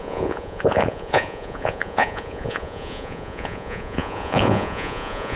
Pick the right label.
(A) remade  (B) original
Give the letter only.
A